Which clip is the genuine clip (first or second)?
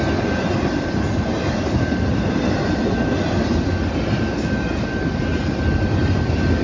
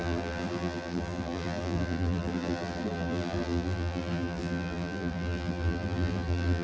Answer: first